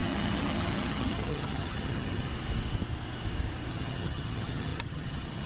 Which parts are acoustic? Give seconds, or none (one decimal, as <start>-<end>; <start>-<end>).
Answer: 2.3-3.7